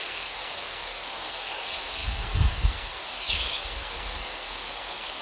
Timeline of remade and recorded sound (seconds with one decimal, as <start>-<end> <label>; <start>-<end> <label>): 0.0-5.2 remade